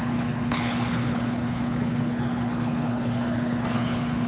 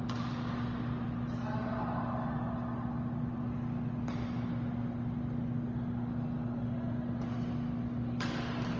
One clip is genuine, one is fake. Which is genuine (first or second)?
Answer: second